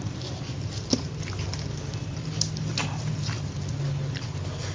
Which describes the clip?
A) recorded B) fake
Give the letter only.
A